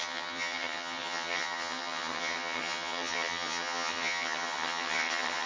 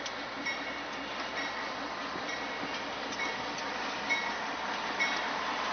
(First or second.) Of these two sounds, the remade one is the first